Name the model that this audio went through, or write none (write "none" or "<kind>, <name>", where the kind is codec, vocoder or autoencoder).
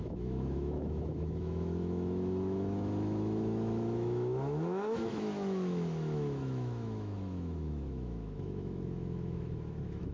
autoencoder, DAC-VAE